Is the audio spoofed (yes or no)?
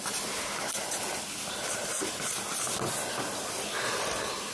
no